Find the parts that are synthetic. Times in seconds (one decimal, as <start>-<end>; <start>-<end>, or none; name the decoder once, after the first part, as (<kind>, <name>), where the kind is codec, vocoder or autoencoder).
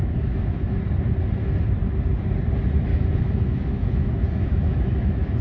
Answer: 0.0-0.8 (autoencoder, DAC-VAE); 2.9-5.4